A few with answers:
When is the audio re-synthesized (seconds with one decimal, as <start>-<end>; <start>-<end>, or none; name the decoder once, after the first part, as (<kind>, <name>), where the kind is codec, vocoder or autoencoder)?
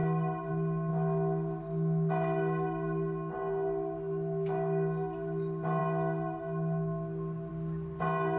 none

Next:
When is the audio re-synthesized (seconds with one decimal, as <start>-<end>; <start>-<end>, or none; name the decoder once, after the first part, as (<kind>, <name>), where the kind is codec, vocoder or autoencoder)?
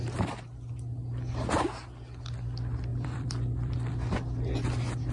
2.9-3.9 (vocoder, BigVGAN v2)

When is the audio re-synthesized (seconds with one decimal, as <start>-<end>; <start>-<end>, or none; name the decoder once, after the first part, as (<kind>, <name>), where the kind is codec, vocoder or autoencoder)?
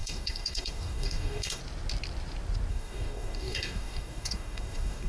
0.0-1.6 (codec, DAC); 2.7-5.1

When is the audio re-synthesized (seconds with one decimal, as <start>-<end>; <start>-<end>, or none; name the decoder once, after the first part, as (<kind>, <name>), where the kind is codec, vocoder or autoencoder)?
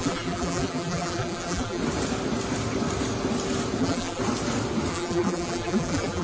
0.0-1.8 (vocoder, BigVGAN v2); 3.8-4.2; 4.9-6.2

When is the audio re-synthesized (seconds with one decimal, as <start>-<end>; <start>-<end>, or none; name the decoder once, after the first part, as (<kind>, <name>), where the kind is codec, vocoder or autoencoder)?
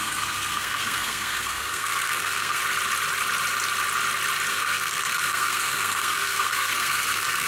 0.0-2.6 (codec, SNAC); 4.5-7.5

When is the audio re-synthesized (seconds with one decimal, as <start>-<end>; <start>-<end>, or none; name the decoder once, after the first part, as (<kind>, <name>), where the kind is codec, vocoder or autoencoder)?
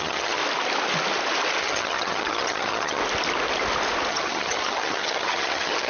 0.0-0.4 (vocoder, HiFi-GAN); 1.6-3.0; 4.1-5.9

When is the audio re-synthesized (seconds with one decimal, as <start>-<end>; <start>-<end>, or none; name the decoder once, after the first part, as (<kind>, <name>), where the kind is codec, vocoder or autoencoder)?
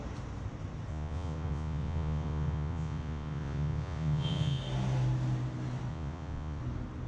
0.9-4.6 (vocoder, Vocos); 5.9-6.6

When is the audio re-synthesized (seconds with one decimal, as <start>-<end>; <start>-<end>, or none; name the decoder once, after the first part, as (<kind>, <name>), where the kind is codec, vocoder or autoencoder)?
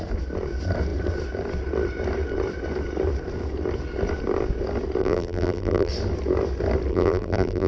5.0-5.9 (vocoder, BigVGAN v2); 6.9-7.7